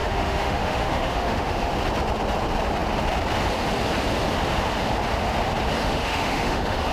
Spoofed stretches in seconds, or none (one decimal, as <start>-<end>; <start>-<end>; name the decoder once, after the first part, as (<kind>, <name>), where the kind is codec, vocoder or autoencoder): 0.0-1.7 (autoencoder, DAC-VAE); 5.8-6.9